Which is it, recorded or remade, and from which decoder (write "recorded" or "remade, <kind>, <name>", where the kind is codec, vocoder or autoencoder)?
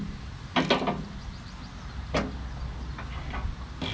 recorded